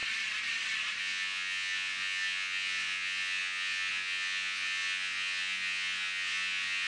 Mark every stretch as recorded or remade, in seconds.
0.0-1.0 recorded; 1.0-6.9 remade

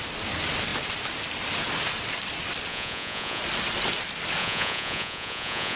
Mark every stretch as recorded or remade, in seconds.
0.0-2.7 recorded; 2.7-3.4 remade; 3.4-4.4 recorded; 4.4-5.8 remade

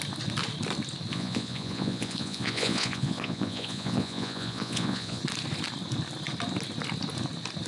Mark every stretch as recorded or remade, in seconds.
0.0-1.1 recorded; 1.1-5.2 remade; 5.2-7.7 recorded